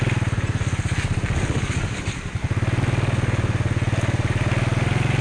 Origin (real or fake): real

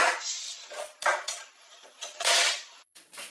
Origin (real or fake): fake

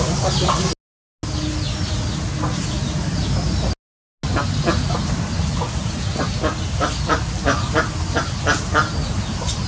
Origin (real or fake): real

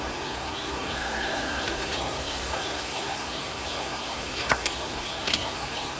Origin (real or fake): fake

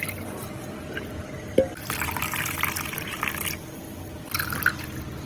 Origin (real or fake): real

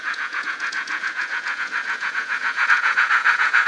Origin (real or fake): fake